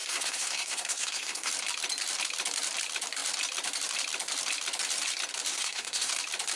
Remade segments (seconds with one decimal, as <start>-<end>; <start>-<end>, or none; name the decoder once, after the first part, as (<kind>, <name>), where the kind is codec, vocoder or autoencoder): 0.0-1.5 (codec, SNAC); 5.5-6.1